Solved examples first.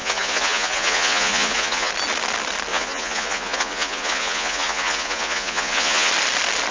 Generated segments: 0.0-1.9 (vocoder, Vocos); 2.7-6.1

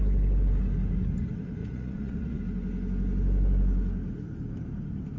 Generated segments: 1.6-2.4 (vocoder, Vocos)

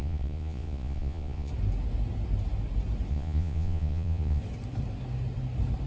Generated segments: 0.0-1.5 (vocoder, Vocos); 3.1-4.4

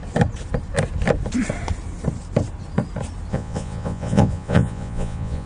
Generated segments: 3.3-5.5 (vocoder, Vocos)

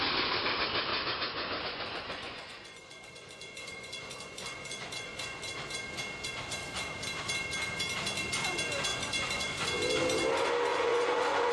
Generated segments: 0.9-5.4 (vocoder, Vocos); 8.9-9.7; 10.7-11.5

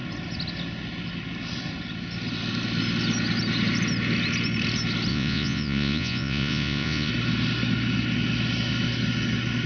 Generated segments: 5.1-7.1 (vocoder, Vocos)

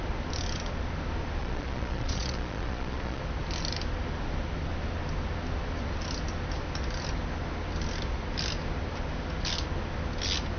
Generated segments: 1.4-3.2 (vocoder, Vocos)